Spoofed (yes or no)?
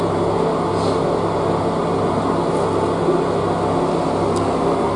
no